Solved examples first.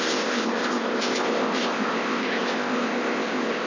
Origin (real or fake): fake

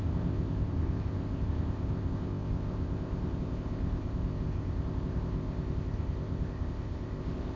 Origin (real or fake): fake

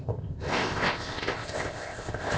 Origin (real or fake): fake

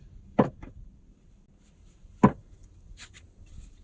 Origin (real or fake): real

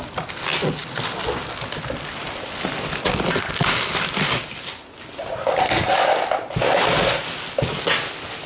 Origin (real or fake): real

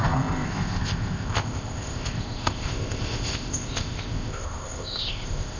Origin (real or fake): fake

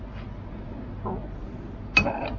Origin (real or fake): real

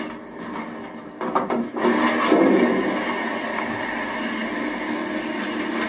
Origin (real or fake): real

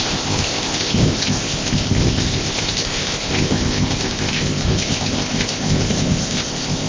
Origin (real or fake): fake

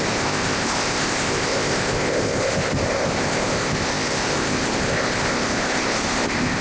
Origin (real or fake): fake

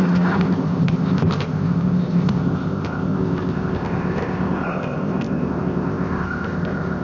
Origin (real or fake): fake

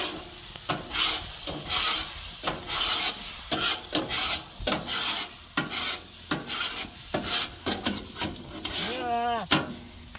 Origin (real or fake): real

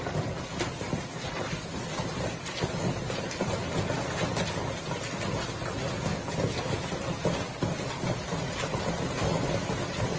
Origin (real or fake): real